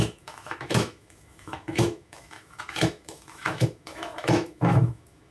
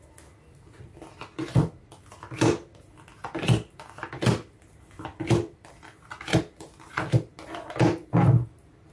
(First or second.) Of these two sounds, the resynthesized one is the first